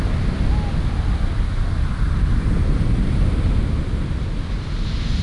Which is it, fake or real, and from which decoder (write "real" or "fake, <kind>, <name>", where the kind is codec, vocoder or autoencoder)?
real